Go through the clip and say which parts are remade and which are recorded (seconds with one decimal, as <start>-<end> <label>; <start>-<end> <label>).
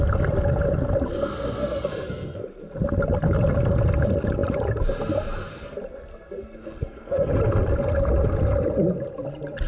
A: 0.0-1.6 recorded; 1.6-2.7 remade; 2.7-6.1 recorded; 6.1-7.3 remade; 7.3-9.7 recorded